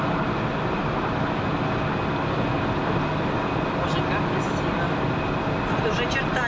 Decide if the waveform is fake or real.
real